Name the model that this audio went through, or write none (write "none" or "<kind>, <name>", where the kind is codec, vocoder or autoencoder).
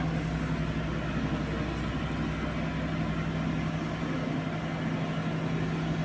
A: none